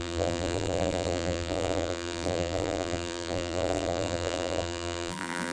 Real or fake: fake